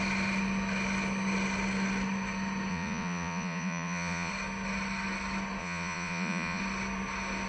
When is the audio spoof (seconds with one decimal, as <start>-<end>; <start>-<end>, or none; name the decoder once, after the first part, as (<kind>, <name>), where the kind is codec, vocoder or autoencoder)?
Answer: 2.7-4.3 (vocoder, Vocos); 5.6-6.6